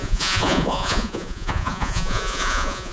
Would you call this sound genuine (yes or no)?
no